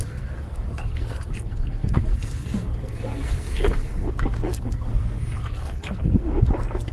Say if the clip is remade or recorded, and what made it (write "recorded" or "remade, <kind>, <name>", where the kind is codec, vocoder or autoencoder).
remade, codec, SNAC